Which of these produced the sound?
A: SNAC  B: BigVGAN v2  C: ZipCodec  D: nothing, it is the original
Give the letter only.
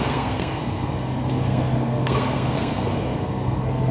A